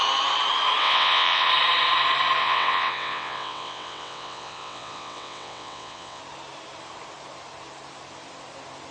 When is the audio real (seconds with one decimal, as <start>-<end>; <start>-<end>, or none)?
0.0-0.8; 1.5-2.4; 6.2-8.9